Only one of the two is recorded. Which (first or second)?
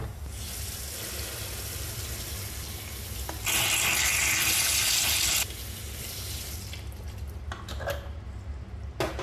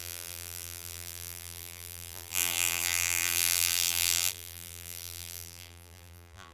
first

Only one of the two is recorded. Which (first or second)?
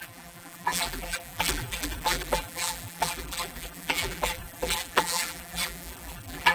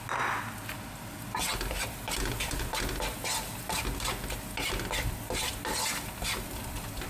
second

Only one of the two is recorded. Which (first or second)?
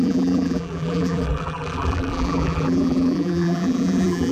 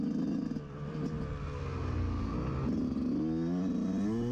second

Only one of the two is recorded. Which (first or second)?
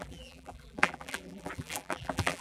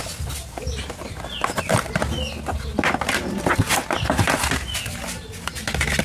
second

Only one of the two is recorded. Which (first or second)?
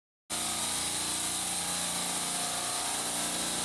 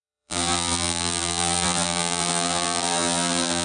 first